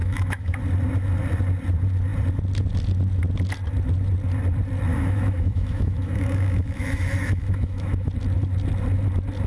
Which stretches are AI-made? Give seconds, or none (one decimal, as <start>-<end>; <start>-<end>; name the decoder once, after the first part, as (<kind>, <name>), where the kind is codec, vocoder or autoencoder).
0.0-0.6 (autoencoder, DAC-VAE); 4.9-8.1